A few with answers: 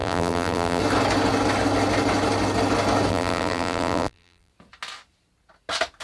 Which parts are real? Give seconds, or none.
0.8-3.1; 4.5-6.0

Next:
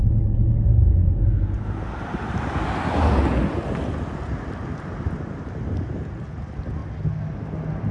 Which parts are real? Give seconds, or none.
0.0-7.9

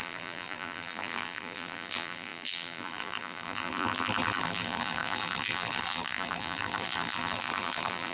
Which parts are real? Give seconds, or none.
none

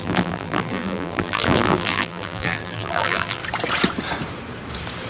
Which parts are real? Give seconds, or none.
3.4-5.1